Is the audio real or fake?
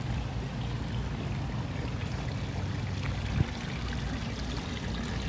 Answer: real